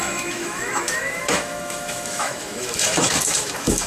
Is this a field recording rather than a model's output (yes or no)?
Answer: no